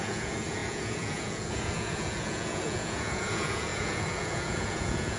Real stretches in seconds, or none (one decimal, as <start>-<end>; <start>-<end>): none